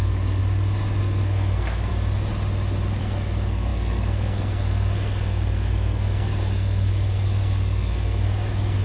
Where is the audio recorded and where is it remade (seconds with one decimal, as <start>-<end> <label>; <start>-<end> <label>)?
0.0-0.4 remade; 0.4-1.0 recorded; 1.0-1.9 remade; 1.9-3.0 recorded; 3.0-8.8 remade